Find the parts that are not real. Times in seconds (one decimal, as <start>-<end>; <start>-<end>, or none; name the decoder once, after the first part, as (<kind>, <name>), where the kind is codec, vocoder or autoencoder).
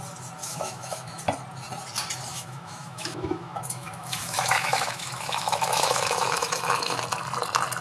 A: 0.4-1.2 (autoencoder, DAC-VAE); 2.3-7.0